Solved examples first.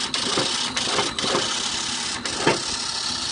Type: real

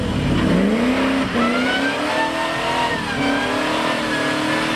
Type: real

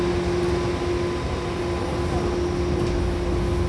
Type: real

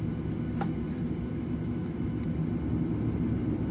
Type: real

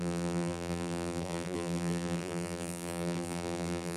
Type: fake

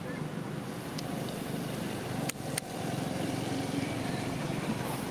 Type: fake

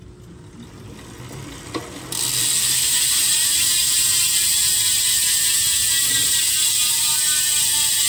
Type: real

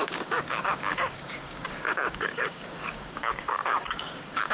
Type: fake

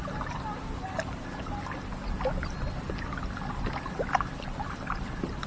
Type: real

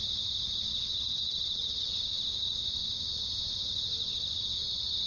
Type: real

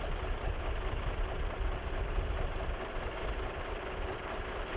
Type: real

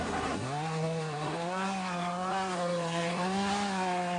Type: fake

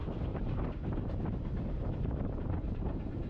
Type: fake